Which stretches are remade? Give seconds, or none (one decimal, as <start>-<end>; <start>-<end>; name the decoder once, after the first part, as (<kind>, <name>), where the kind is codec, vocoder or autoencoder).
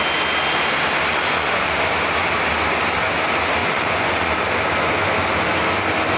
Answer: 1.1-1.7 (vocoder, Vocos); 3.6-4.4